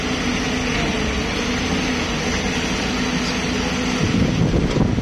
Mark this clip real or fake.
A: real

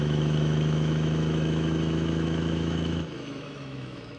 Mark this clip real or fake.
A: fake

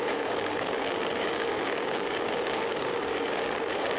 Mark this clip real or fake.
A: fake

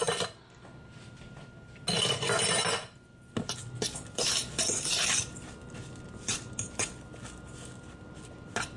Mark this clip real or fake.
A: real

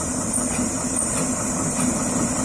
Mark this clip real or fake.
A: real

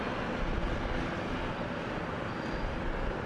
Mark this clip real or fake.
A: real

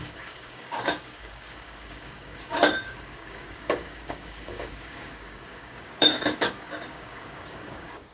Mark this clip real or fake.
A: fake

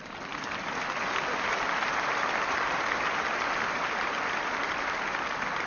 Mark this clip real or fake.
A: real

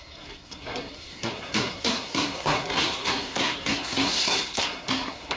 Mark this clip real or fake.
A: fake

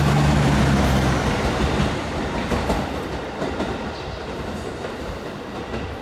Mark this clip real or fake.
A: real